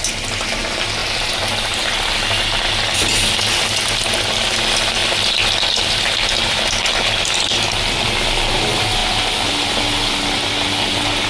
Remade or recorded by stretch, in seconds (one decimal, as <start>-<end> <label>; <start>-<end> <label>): 0.0-1.0 recorded; 1.0-1.9 remade; 1.9-11.3 recorded